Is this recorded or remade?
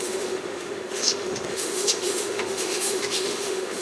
remade